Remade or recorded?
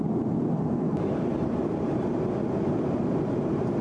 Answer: recorded